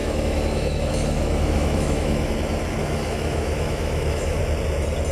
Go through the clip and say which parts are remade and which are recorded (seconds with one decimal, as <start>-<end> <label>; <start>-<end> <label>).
0.0-2.3 remade; 2.3-2.8 recorded; 2.8-4.4 remade; 4.4-5.1 recorded